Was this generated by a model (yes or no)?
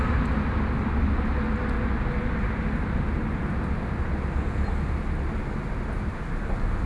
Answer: no